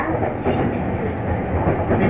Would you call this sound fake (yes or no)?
no